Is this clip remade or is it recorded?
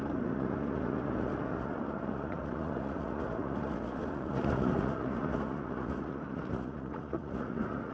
remade